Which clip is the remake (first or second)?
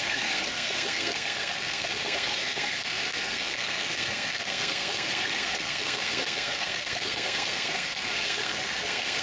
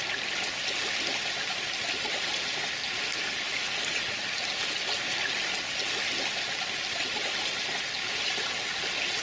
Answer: first